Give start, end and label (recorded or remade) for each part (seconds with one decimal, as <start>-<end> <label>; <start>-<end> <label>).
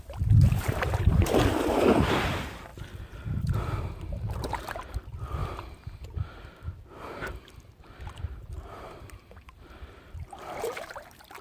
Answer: 0.0-2.7 remade; 2.7-4.1 recorded; 4.1-5.4 remade; 5.4-8.2 recorded; 8.2-11.4 remade